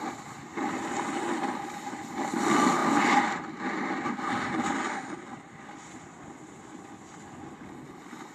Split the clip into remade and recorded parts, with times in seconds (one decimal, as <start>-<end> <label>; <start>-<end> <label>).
0.0-0.5 recorded; 0.5-1.3 remade; 1.3-8.3 recorded